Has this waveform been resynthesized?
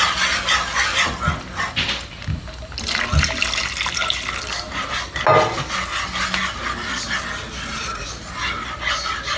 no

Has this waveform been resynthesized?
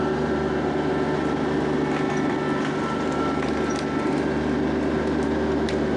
no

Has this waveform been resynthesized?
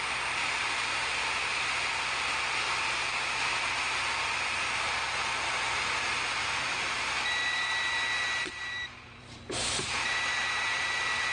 yes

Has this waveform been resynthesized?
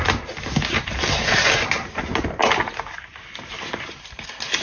no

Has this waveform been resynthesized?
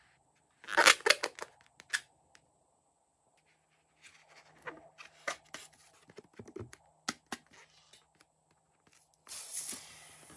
no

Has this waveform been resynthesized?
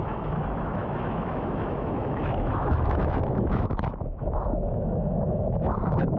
yes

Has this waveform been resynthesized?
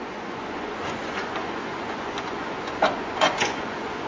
yes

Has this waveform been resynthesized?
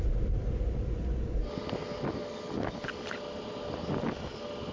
no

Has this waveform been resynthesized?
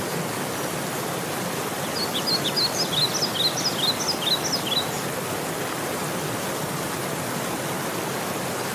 no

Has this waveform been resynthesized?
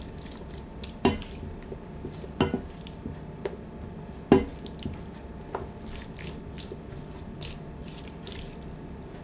no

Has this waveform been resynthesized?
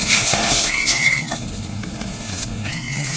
yes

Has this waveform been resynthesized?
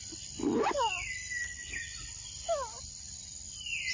no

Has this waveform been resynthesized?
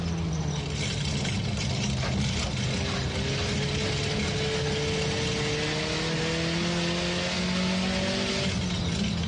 no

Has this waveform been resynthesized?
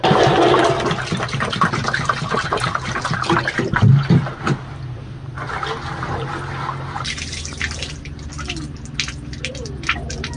no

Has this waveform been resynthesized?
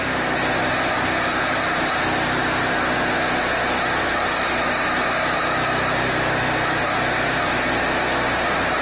no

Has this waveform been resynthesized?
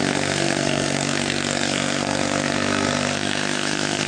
yes